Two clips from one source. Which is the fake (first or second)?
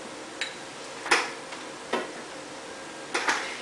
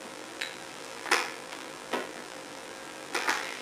second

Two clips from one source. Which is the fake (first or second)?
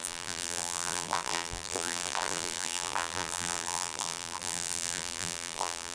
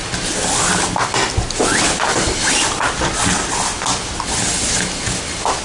first